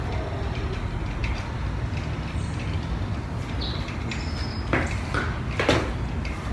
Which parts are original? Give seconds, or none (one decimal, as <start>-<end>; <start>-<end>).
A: 0.0-6.5